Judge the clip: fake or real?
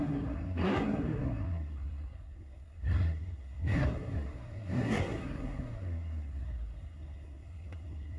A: fake